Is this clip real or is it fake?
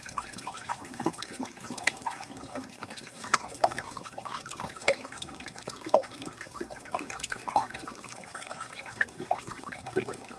fake